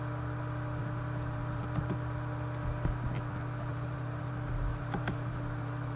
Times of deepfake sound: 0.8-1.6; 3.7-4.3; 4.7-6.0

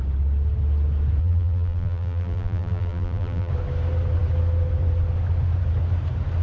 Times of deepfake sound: 1.2-3.5

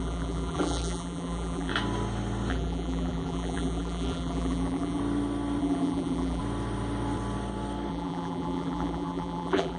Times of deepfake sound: 0.0-1.7; 2.5-5.0; 5.6-6.4; 7.9-9.8

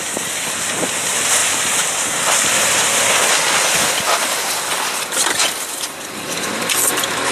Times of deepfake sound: 0.0-1.4; 5.8-7.3

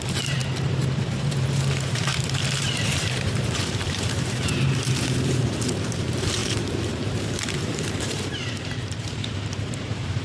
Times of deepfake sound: 0.0-10.2